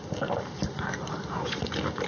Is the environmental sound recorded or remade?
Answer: remade